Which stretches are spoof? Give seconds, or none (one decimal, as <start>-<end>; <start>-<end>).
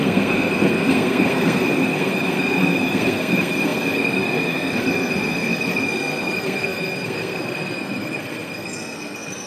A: 0.0-9.5